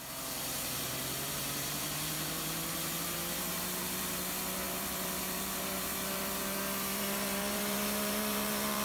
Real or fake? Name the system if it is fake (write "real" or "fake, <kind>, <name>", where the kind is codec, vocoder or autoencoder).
fake, vocoder, BigVGAN v2